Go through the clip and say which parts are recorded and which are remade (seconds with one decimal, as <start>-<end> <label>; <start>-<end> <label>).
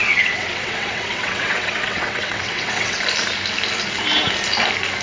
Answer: 0.0-3.0 remade; 3.0-5.0 recorded